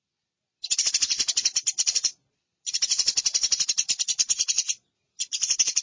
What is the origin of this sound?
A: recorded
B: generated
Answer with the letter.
B